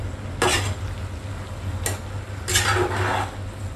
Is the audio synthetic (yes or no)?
no